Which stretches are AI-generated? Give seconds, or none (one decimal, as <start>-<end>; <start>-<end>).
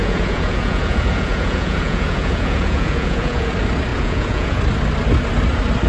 0.0-3.5; 3.9-4.6